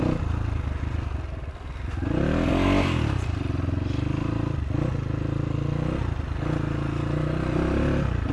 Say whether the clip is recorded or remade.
recorded